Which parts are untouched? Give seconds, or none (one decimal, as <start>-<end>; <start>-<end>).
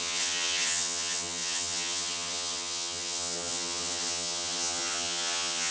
none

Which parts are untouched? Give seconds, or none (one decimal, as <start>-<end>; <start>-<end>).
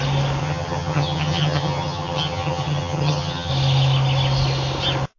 0.0-0.4; 3.5-5.2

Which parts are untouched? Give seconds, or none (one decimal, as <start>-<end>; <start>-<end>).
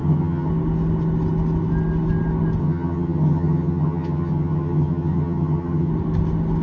0.5-2.6; 5.9-6.6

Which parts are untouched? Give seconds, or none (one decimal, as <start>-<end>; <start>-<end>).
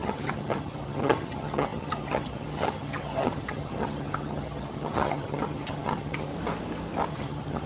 6.3-7.1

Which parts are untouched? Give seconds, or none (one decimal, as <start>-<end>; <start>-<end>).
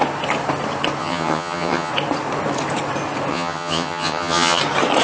0.0-1.0; 1.9-3.3; 4.6-5.0